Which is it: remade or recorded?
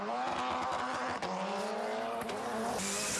recorded